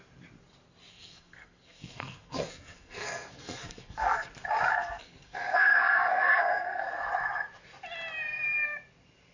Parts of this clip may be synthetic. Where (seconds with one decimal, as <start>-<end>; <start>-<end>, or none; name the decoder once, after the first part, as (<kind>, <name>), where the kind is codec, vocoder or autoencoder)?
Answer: 0.9-4.3 (codec, SNAC); 4.7-6.8